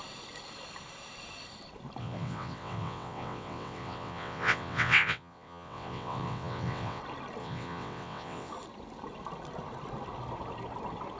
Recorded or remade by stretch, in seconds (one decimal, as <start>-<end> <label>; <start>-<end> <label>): 0.0-2.0 recorded; 2.0-7.0 remade; 7.0-7.4 recorded; 7.4-8.5 remade; 8.5-11.2 recorded